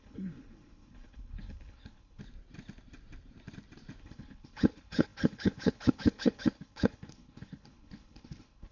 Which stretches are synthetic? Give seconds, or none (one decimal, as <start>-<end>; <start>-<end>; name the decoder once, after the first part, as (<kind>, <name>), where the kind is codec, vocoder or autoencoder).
0.0-2.2 (codec, HILCodec); 4.0-8.7